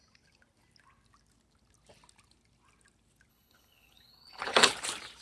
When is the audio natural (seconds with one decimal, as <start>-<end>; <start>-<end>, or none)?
0.0-3.3; 4.7-5.2